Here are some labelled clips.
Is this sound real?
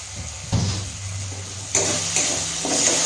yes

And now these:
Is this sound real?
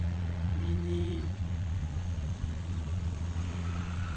no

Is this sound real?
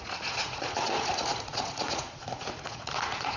no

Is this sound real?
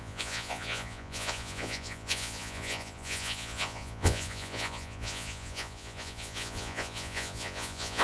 no